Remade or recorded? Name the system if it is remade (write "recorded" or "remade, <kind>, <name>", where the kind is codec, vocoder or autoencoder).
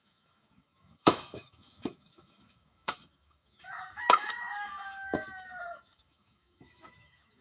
remade, autoencoder, DAC-VAE